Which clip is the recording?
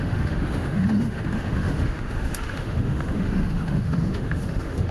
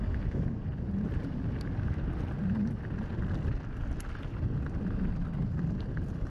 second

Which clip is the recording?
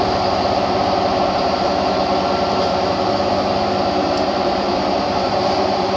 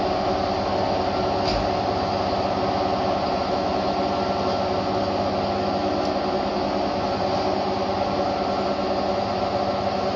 second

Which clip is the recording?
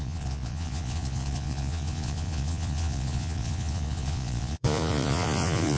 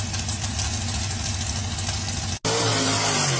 second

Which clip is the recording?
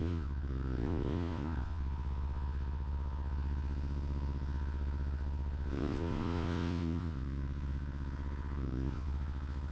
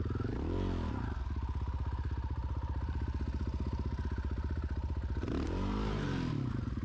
second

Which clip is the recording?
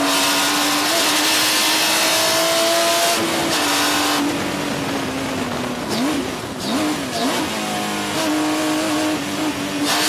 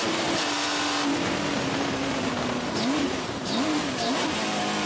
first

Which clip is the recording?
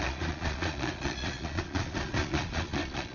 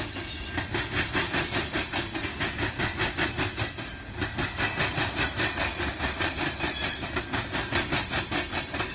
second